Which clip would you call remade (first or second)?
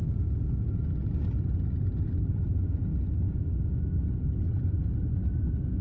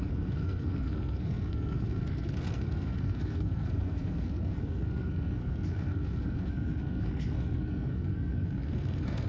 second